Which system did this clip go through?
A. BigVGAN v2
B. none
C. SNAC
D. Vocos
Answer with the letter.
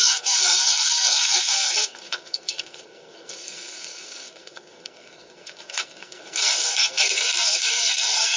C